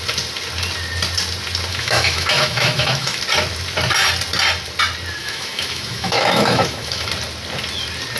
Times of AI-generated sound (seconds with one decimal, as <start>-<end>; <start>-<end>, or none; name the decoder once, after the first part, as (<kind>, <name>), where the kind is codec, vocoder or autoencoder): 1.7-3.2 (autoencoder, DAC-VAE); 5.2-7.1